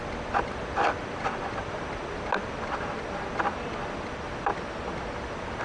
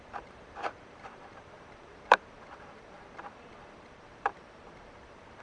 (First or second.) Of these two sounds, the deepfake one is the second